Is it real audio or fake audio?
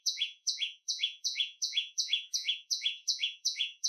fake